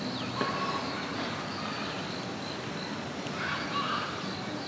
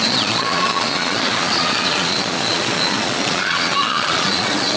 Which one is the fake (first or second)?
second